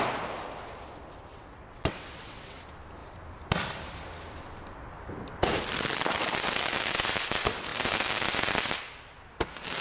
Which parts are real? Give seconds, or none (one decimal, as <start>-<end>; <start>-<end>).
0.0-1.3; 2.6-9.8